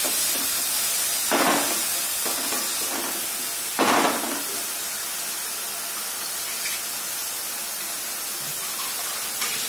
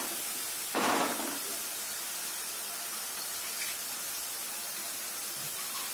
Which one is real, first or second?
first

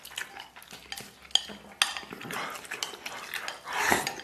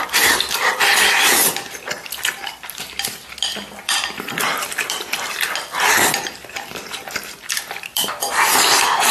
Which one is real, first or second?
first